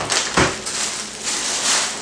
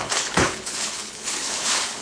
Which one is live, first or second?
first